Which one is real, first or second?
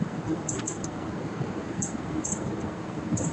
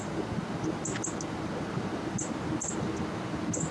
second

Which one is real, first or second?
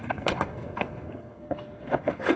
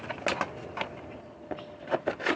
second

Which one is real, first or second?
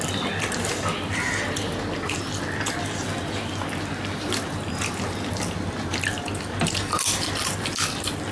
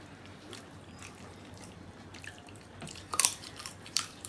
first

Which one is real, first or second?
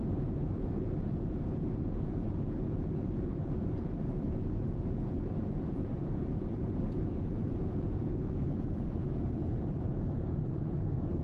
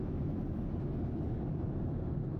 second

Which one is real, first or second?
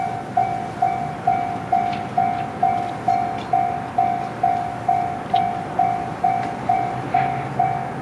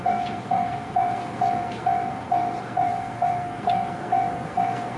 first